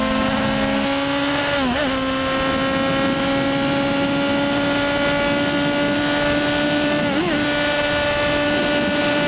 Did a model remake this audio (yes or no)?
no